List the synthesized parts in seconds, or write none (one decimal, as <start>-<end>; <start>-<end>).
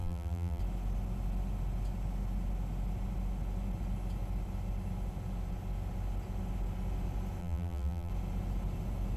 0.0-0.6; 7.4-8.1